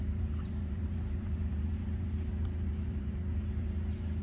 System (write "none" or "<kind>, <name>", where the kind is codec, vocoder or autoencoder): vocoder, BigVGAN v2